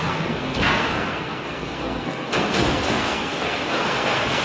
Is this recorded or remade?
remade